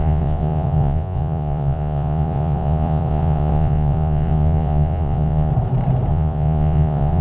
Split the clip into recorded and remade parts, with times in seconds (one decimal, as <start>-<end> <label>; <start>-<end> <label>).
0.0-5.5 remade; 5.5-6.1 recorded; 6.1-7.2 remade